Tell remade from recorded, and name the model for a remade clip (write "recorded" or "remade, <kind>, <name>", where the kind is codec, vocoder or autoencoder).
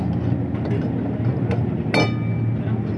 recorded